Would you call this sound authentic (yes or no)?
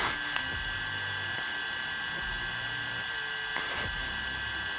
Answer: yes